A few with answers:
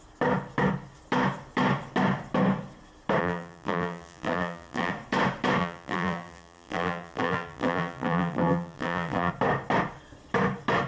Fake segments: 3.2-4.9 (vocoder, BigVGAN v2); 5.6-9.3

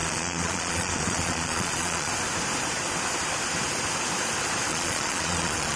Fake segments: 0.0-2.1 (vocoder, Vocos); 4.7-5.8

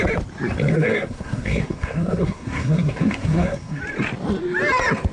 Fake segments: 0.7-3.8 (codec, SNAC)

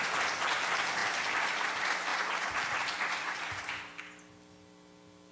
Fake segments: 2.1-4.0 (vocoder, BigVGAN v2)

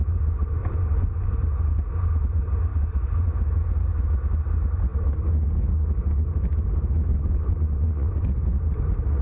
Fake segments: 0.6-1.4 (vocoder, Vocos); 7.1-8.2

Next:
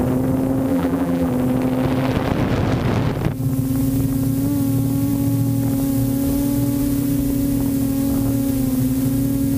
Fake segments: 0.7-1.3 (vocoder, BigVGAN v2)

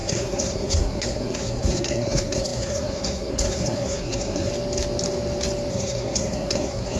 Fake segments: 0.0-4.5 (codec, SNAC); 5.7-7.0